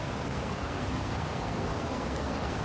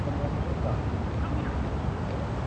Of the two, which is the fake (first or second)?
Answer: first